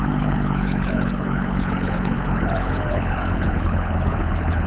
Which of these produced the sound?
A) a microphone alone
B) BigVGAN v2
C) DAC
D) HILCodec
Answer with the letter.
D